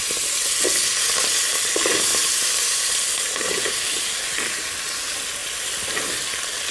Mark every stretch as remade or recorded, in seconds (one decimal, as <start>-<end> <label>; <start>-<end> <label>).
0.0-2.1 recorded; 2.1-4.9 remade; 4.9-5.4 recorded; 5.4-6.7 remade